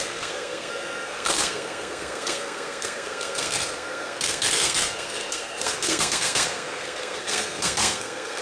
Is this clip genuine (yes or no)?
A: no